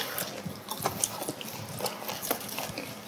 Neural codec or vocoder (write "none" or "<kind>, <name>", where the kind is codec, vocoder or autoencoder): none